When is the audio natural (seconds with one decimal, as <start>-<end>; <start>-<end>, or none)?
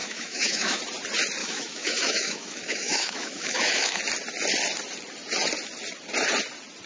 0.8-1.4; 4.0-6.9